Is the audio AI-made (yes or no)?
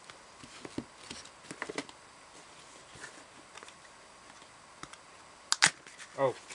no